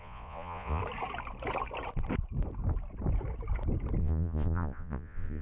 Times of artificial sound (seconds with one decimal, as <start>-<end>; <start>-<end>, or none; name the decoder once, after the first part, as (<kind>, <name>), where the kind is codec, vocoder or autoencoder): 0.0-0.8 (vocoder, Vocos); 4.0-5.4